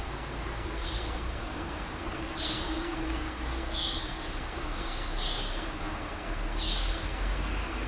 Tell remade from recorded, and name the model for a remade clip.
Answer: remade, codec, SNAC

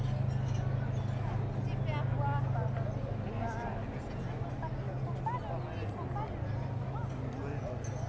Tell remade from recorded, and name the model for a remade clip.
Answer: recorded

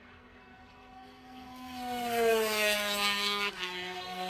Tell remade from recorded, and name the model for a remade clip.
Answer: remade, codec, SNAC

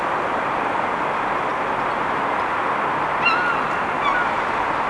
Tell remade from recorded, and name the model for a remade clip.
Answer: recorded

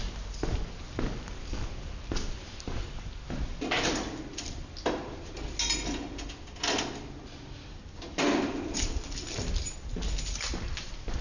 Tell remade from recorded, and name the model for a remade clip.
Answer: recorded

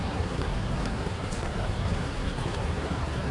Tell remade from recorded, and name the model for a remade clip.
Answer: remade, codec, SNAC